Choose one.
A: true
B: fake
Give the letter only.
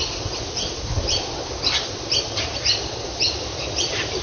A